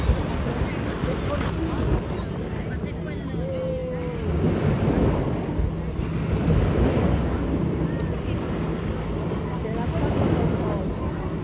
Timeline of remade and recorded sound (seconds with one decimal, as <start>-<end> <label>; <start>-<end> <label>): 0.0-11.4 recorded